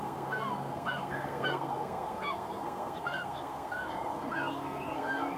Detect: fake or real fake